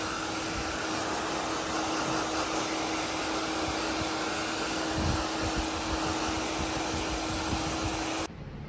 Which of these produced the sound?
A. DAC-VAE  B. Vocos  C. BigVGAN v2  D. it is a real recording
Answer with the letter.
D